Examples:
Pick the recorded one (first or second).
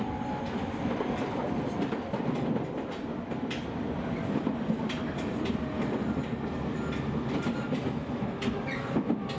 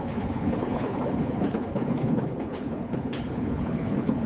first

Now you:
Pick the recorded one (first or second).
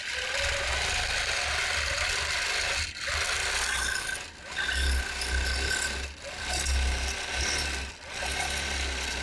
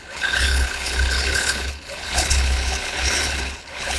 first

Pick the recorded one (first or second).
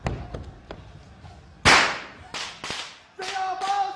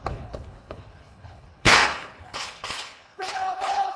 first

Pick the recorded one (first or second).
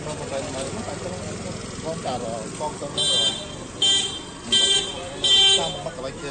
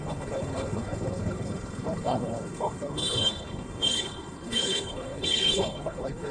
first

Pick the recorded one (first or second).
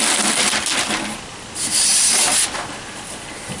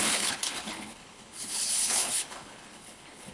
first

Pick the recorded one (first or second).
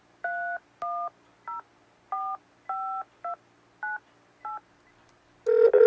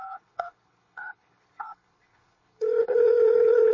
first